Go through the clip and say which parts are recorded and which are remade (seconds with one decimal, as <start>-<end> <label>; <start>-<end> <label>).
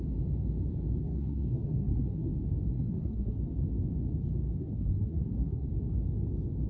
0.0-1.0 recorded; 1.0-2.3 remade; 2.3-2.7 recorded; 2.7-3.4 remade; 3.4-4.6 recorded; 4.6-5.7 remade; 5.7-6.7 recorded